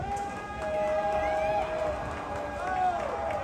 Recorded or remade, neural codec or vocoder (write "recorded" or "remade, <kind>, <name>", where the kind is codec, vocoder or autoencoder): recorded